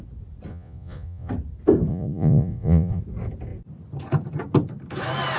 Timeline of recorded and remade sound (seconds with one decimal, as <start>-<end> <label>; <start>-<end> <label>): 0.0-0.5 recorded; 0.5-1.3 remade; 1.3-1.9 recorded; 1.9-3.0 remade; 3.0-5.4 recorded

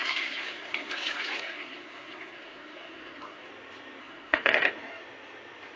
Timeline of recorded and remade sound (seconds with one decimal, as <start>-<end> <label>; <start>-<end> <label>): 0.0-3.5 remade; 3.5-4.0 recorded; 4.0-4.7 remade; 4.7-5.8 recorded